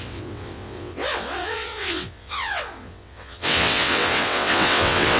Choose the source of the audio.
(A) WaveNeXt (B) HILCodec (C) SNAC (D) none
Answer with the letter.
A